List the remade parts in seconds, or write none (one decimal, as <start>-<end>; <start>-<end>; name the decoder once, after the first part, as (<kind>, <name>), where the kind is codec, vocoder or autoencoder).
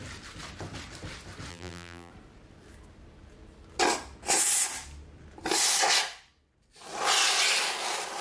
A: 1.5-2.1 (vocoder, BigVGAN v2)